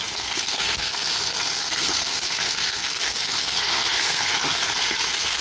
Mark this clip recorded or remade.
remade